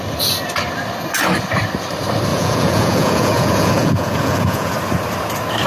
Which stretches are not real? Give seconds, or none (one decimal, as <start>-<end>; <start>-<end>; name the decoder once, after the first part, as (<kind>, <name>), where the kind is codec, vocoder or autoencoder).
2.3-4.7 (vocoder, Vocos)